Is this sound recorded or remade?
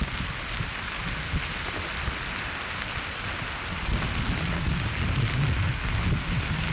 recorded